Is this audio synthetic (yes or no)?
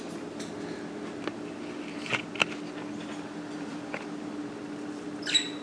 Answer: no